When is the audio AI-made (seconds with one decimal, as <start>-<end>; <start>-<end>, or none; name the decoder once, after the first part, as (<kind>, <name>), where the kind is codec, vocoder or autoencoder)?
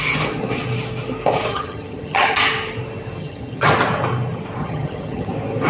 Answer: 1.5-2.4 (vocoder, HiFi-GAN); 3.2-3.7; 4.6-5.3